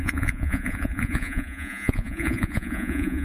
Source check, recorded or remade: remade